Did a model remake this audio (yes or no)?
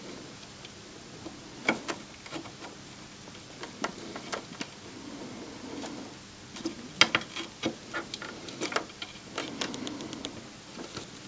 no